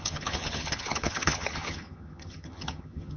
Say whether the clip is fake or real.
fake